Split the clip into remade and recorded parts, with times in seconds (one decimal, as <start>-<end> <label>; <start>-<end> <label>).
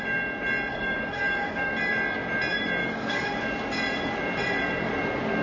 0.0-0.7 recorded; 0.7-1.7 remade; 1.7-2.8 recorded; 2.8-3.3 remade; 3.3-5.4 recorded